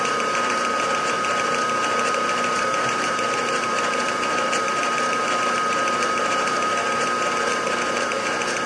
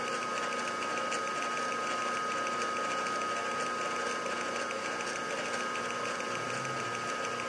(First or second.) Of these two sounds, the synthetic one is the first